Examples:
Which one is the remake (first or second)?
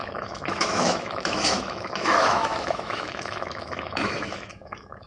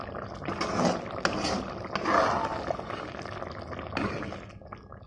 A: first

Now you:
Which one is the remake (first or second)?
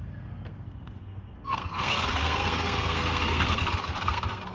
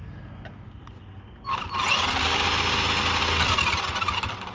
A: first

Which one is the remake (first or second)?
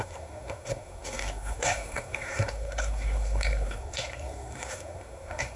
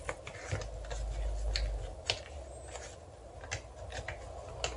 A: first